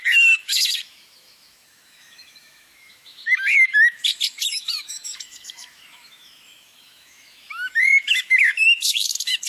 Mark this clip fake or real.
fake